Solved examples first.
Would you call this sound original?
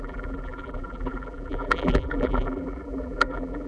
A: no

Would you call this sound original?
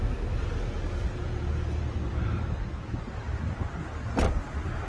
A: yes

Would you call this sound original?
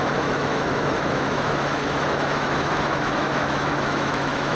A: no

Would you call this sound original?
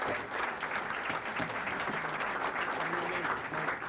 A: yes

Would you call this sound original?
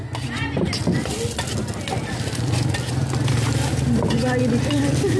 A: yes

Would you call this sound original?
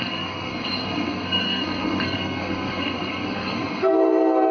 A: no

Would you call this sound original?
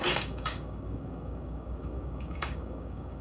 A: no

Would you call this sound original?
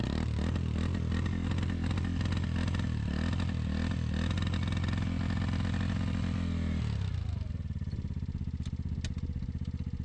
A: yes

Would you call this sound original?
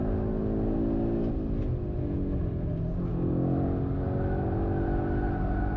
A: yes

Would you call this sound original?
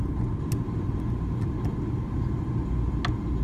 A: yes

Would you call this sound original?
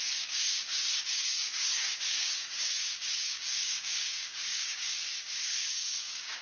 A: no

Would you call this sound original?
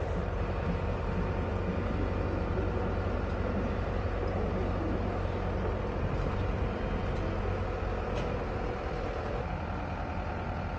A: yes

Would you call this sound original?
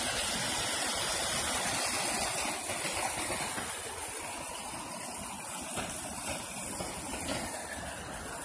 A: yes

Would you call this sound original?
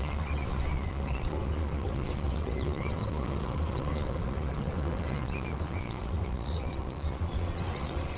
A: no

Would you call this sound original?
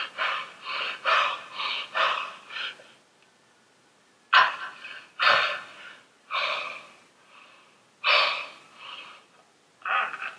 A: yes